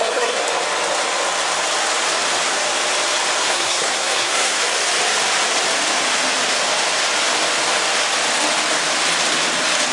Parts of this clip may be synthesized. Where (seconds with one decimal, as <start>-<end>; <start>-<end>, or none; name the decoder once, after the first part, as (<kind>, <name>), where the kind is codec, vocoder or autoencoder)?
0.0-0.4 (codec, SNAC); 3.4-4.6